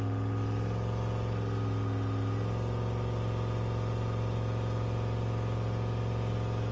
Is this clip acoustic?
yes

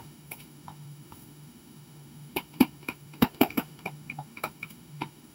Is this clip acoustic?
no